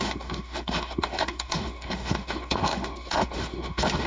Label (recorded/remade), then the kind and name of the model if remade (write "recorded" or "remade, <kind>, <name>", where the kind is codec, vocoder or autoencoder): remade, autoencoder, DAC-VAE